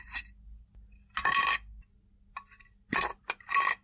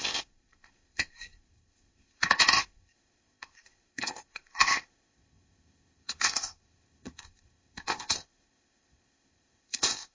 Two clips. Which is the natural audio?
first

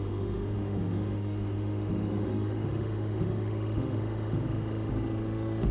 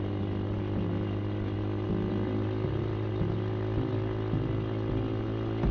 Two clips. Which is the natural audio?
second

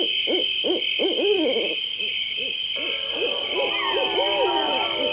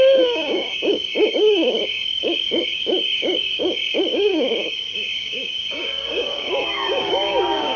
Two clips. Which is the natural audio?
first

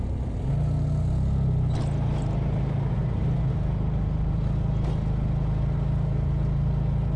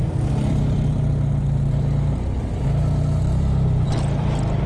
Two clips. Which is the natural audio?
first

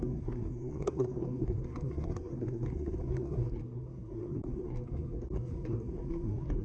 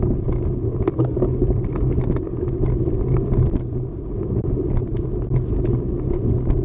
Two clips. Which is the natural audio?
second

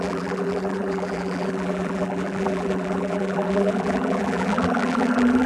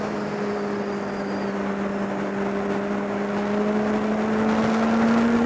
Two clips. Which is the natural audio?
second